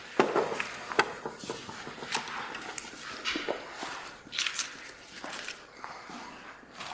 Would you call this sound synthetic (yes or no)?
no